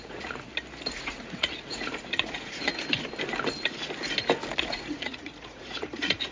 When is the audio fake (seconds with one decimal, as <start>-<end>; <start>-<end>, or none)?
0.0-0.5; 1.0-2.7; 4.6-6.3

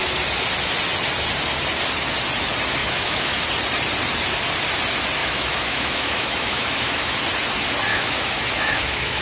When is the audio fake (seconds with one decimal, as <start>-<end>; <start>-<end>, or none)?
2.8-3.4; 5.2-7.2; 7.9-9.2

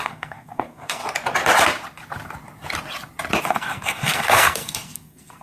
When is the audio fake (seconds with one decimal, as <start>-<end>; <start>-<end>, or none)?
0.0-1.0; 3.4-5.4

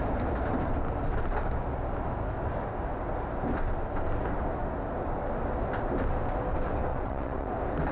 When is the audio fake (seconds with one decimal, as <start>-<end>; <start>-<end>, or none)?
6.9-7.5

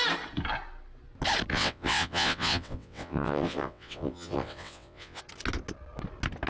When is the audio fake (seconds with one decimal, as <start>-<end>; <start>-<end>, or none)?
1.5-5.2

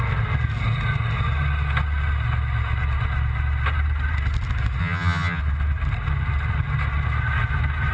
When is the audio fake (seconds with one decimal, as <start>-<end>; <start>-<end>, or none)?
4.8-5.4